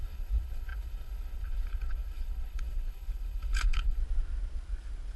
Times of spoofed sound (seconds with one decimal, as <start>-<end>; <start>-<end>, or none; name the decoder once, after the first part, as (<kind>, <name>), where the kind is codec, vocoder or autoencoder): 0.0-4.0 (codec, HILCodec)